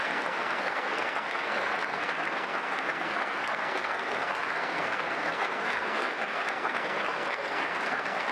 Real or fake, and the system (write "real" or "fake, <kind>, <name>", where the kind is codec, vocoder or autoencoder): fake, codec, SNAC